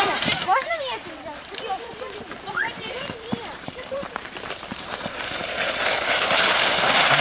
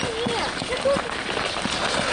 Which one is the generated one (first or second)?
first